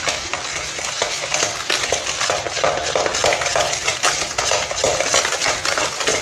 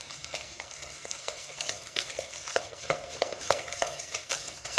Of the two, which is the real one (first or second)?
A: first